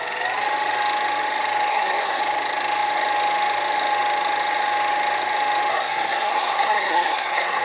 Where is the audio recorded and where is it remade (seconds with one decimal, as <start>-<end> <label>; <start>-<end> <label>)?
0.0-1.7 recorded; 1.7-2.2 remade; 2.2-5.7 recorded; 5.7-7.6 remade